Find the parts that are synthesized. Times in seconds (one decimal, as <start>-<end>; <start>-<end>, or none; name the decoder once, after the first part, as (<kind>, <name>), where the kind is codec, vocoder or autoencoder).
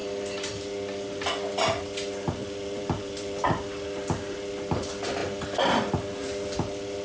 0.0-0.5 (vocoder, BigVGAN v2); 2.4-3.6; 5.2-5.9